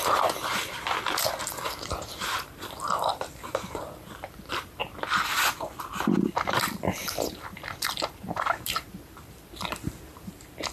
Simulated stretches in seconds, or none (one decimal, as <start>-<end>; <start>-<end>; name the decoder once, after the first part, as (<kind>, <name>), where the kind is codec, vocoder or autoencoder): 0.0-4.8 (vocoder, BigVGAN v2); 5.3-10.7